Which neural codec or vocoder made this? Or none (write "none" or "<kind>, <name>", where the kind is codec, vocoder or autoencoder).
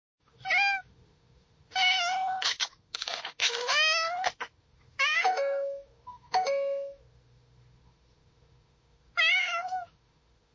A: autoencoder, DAC-VAE